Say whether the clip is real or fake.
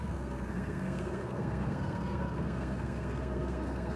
fake